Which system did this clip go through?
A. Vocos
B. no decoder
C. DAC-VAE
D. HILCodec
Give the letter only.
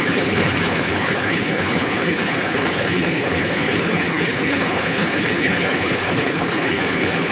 D